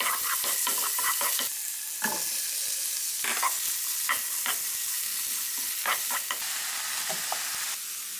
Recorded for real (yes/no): yes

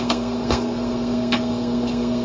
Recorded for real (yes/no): no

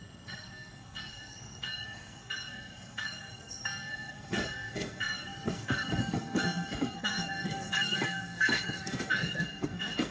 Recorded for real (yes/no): no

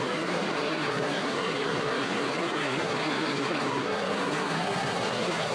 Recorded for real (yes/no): no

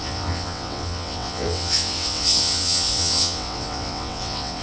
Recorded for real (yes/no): no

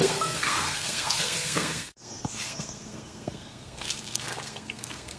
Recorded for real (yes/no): no